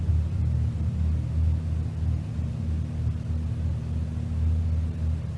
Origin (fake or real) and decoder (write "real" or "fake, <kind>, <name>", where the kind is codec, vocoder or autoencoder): real